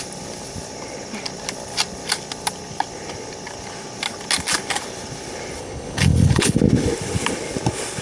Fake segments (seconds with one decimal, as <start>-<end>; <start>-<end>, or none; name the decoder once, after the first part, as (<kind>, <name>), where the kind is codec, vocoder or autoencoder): 5.6-6.6 (codec, HILCodec)

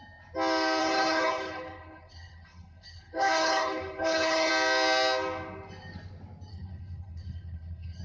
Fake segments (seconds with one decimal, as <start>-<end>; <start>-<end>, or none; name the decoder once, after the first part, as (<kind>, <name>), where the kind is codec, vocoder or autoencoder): 0.8-4.5 (codec, HILCodec); 6.5-8.0

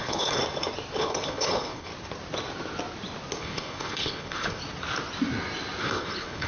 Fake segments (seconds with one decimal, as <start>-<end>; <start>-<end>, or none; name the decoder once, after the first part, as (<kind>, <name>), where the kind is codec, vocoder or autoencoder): 0.0-0.4 (codec, HILCodec); 1.0-1.9; 3.4-4.6; 5.8-6.5

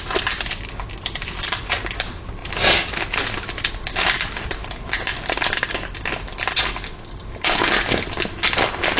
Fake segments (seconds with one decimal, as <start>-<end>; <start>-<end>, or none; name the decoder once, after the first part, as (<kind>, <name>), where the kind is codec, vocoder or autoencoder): none

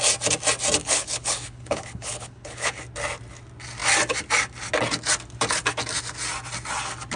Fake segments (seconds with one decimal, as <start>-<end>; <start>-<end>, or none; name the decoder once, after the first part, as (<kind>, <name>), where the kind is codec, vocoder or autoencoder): 0.8-2.8 (codec, HILCodec)

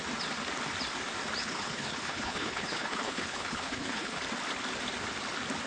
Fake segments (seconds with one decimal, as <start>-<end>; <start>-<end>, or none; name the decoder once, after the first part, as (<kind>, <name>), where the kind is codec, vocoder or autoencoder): 1.4-4.2 (codec, HILCodec)